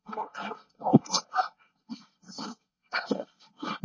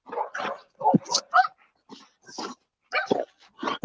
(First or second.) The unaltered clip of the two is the second